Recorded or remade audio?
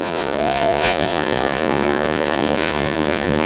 remade